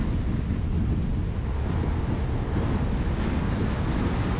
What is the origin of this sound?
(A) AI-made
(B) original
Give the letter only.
B